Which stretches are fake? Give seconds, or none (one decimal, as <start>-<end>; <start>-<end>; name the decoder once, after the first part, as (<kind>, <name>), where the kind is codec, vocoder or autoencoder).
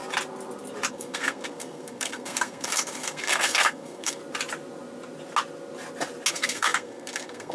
0.9-4.2 (codec, SNAC); 6.3-7.5